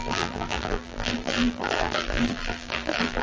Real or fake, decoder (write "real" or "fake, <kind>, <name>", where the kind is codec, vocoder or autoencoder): fake, vocoder, BigVGAN v2